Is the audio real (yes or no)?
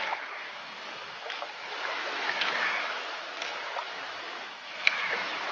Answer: no